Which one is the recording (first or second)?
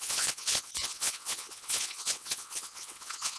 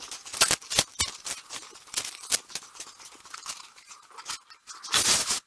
second